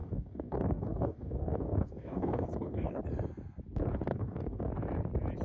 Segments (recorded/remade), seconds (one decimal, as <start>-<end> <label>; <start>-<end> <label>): 0.0-3.0 remade; 3.0-4.1 recorded; 4.1-4.7 remade; 4.7-5.4 recorded